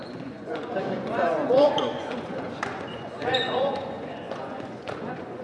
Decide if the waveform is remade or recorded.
remade